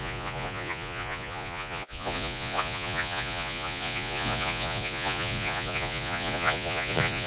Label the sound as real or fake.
fake